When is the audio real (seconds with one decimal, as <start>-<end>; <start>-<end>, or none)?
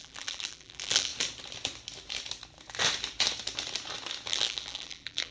1.1-4.3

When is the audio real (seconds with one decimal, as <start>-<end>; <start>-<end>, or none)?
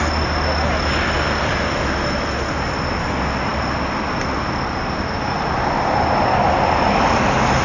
0.0-7.6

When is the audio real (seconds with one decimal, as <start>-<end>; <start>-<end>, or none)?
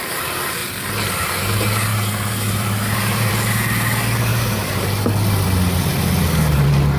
0.0-1.9; 3.3-4.3; 4.8-7.0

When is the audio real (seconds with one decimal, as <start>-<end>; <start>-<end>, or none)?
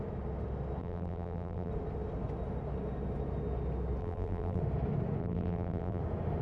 0.0-0.8; 1.7-4.0; 4.6-5.2; 6.0-6.4